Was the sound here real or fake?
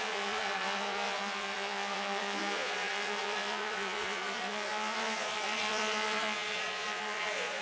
fake